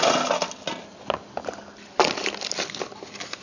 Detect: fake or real real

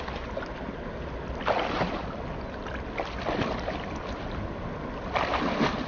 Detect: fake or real real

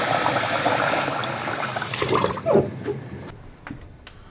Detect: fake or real real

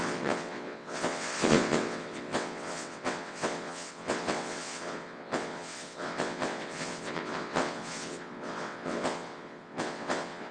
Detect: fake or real fake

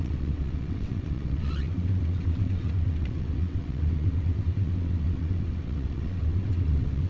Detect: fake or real fake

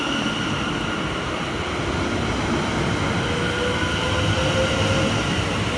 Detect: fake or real real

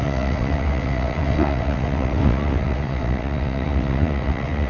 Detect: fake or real fake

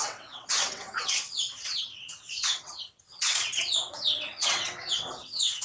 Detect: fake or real fake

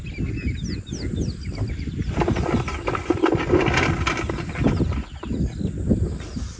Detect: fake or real real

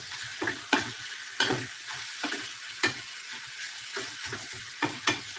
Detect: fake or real fake